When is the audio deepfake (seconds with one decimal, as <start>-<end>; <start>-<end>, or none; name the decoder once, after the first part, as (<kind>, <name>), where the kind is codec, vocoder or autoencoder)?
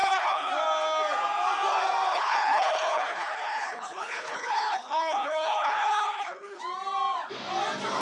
0.0-0.5 (codec, HILCodec); 2.1-6.6